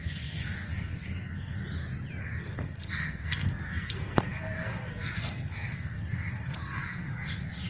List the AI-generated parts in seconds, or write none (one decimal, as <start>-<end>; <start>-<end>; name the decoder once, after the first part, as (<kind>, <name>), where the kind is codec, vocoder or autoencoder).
0.0-1.6 (codec, SNAC); 2.2-7.7